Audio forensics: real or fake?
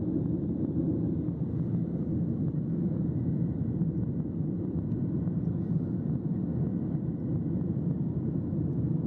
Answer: fake